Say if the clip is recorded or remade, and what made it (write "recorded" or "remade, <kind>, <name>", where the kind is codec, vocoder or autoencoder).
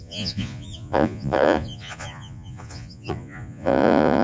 remade, vocoder, Vocos